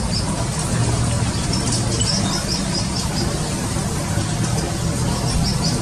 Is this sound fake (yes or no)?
no